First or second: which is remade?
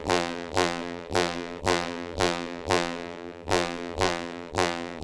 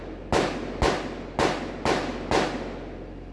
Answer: first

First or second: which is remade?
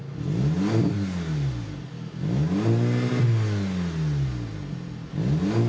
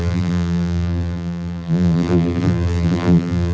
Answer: second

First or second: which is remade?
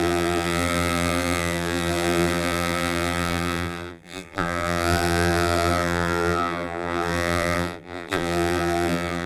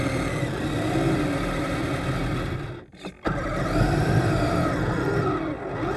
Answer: first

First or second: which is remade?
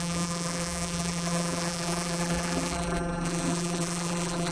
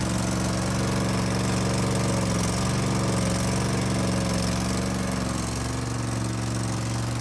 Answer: first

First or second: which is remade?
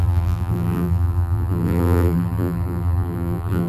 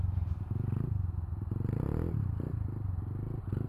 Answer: first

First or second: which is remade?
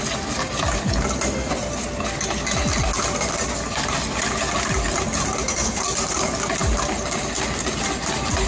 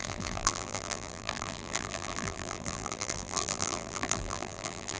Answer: second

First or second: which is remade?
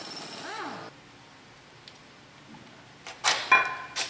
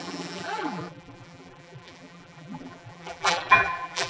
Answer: second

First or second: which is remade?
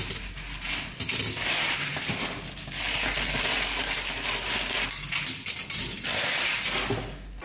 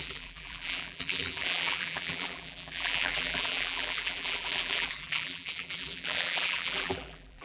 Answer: second